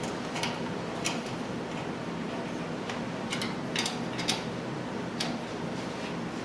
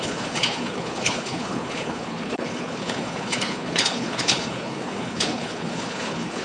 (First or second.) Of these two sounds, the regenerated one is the second